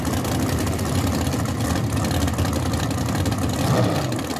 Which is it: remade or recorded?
recorded